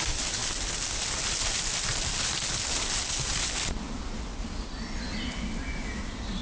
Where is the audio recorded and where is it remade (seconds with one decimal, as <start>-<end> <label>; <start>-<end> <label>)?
0.0-6.4 recorded